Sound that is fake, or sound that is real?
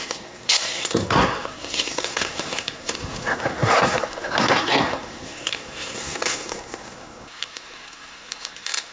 fake